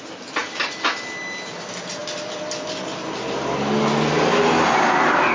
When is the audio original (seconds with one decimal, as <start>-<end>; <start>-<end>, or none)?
0.0-5.3